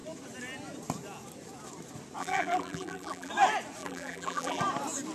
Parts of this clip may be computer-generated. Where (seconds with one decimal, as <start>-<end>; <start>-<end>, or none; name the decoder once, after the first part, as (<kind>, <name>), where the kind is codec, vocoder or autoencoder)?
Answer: 2.2-3.3 (vocoder, BigVGAN v2); 3.8-4.6